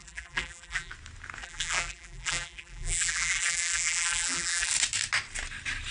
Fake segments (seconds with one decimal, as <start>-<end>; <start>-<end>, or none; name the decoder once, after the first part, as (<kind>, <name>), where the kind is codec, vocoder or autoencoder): 0.0-0.9 (vocoder, BigVGAN v2); 1.4-4.7